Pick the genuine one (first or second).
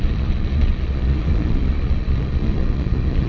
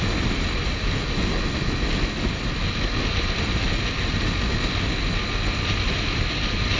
second